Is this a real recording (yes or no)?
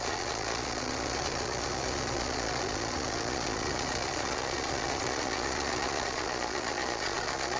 no